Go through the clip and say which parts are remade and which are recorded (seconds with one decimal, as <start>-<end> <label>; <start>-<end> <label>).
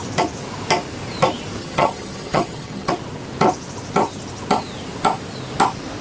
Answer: 0.0-1.6 recorded; 1.6-2.9 remade; 2.9-6.0 recorded